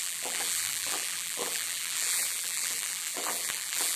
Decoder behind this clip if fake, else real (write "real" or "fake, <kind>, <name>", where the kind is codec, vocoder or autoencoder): fake, vocoder, BigVGAN v2